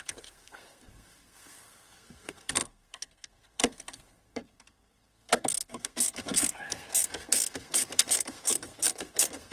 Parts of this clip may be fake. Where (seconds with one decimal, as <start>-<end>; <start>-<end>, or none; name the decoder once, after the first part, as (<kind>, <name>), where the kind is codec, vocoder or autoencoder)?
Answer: 0.0-9.5 (codec, SNAC)